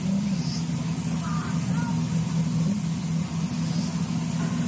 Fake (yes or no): no